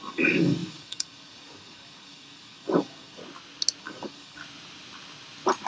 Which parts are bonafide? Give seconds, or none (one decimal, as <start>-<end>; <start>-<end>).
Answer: 3.2-3.8; 4.4-5.7